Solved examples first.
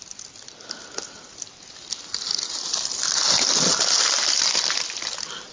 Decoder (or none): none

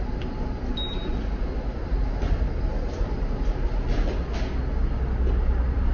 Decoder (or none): none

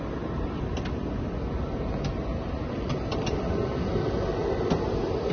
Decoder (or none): none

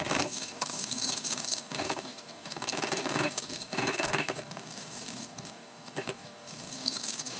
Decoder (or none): codec, DAC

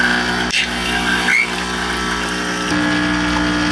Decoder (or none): none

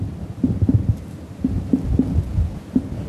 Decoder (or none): none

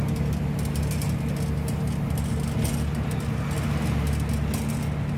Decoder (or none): none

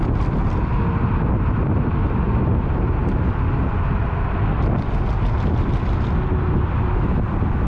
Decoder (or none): none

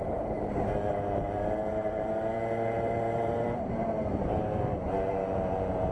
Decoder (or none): vocoder, BigVGAN v2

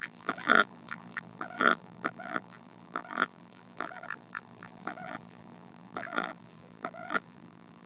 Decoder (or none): vocoder, BigVGAN v2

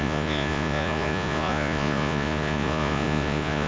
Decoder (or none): vocoder, Vocos